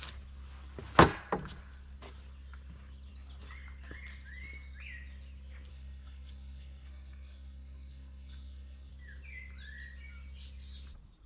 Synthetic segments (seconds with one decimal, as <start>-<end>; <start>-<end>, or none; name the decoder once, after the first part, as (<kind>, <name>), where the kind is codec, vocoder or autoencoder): 5.7-8.9 (codec, SNAC)